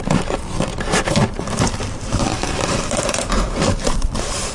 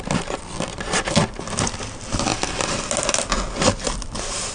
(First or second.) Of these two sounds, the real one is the second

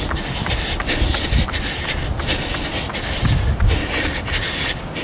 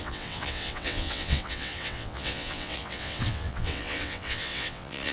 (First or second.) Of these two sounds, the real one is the first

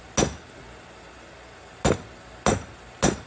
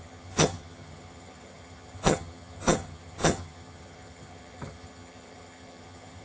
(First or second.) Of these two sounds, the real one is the first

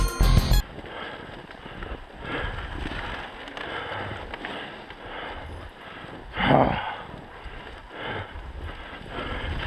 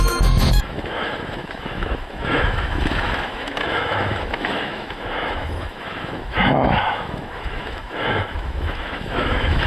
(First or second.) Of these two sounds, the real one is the first